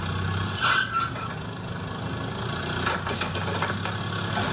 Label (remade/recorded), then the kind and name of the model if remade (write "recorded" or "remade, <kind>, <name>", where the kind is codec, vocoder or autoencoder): recorded